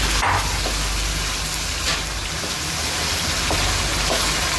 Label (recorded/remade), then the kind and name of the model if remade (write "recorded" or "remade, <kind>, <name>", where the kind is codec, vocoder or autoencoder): recorded